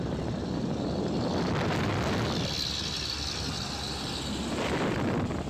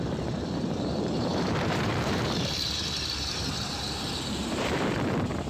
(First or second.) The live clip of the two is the first